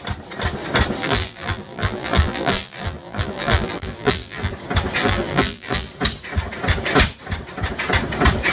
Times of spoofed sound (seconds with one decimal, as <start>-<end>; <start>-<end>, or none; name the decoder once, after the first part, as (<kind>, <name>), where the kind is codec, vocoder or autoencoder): 1.0-4.5 (vocoder, BigVGAN v2); 5.0-5.9